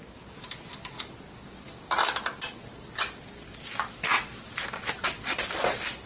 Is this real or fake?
real